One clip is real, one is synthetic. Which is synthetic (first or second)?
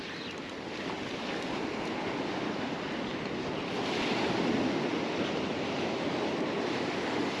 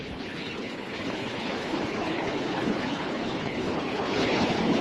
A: second